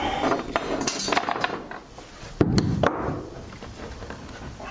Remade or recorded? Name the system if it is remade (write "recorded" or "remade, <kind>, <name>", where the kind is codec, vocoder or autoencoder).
recorded